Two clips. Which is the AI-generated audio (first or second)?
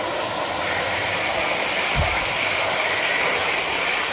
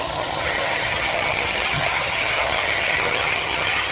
second